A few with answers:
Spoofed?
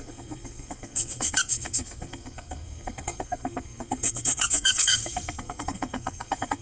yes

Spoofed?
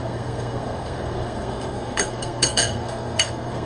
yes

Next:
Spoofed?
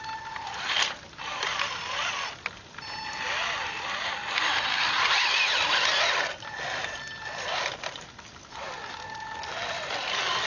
no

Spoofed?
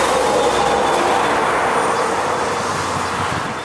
no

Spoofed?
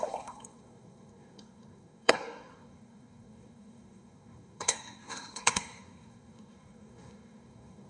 yes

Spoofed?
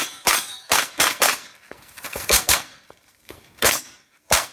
yes